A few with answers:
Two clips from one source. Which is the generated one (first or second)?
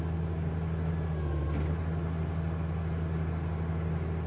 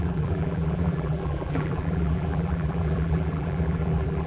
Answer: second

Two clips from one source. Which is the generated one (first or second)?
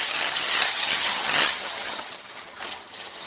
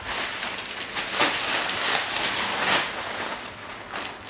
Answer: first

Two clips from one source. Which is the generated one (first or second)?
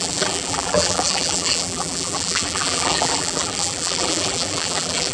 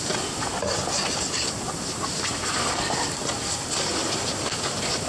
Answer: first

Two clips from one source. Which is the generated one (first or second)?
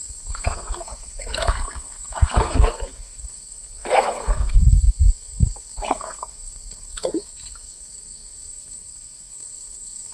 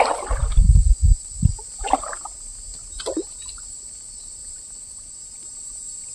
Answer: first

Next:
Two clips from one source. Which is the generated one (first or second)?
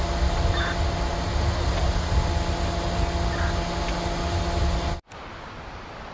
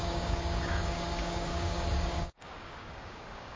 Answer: second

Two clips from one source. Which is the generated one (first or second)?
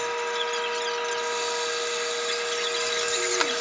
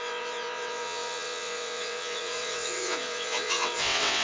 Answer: second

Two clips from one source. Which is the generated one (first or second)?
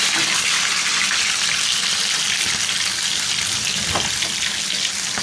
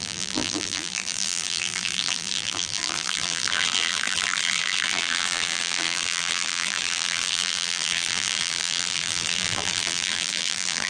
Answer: second